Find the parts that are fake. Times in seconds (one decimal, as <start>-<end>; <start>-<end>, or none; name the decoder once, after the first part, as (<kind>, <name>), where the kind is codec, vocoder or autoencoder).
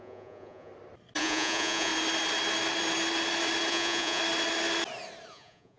0.0-0.7 (vocoder, Vocos); 1.2-1.9; 3.7-4.2; 5.3-5.8